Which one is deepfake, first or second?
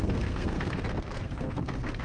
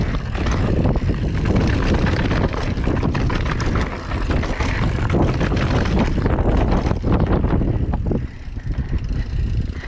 first